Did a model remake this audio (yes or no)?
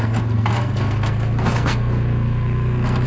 yes